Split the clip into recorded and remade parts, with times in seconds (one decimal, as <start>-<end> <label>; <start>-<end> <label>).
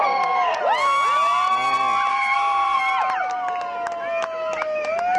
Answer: 0.0-0.6 remade; 0.6-2.1 recorded; 2.1-2.8 remade; 2.8-5.2 recorded